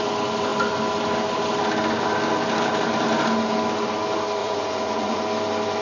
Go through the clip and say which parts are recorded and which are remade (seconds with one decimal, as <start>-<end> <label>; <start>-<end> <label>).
0.0-4.4 recorded; 4.4-5.2 remade; 5.2-5.8 recorded